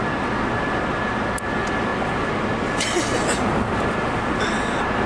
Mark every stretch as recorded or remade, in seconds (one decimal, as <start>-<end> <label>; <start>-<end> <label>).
0.0-5.1 recorded